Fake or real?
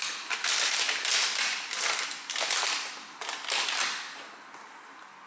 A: real